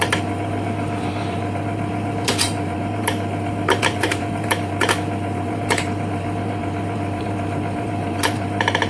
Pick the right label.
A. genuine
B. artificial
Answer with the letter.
B